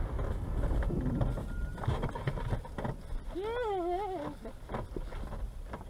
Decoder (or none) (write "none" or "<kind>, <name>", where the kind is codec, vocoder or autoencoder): none